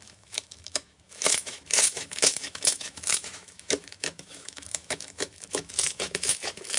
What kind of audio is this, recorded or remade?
remade